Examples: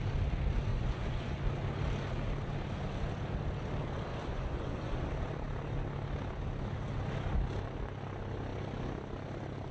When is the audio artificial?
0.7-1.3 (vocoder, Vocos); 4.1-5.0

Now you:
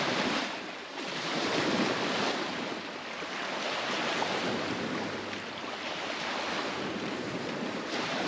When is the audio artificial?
0.0-1.5 (vocoder, BigVGAN v2); 6.5-8.3

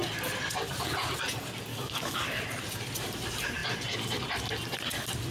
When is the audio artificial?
1.7-2.4 (codec, DAC)

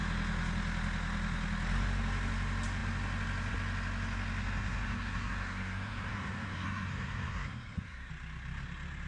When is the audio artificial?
4.4-8.1 (codec, SNAC)

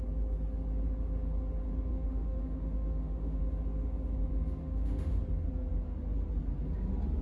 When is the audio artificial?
1.9-3.4 (autoencoder, DAC-VAE); 4.6-5.2

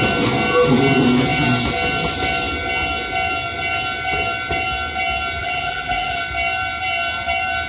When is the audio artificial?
5.4-6.2 (vocoder, BigVGAN v2)

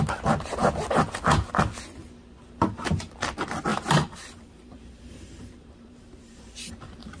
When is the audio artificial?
3.7-6.7 (vocoder, BigVGAN v2)

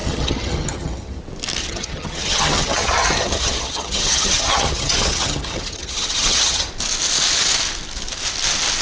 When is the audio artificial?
0.0-1.2 (vocoder, HiFi-GAN); 1.6-6.7